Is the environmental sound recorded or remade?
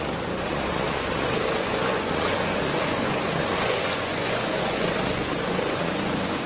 remade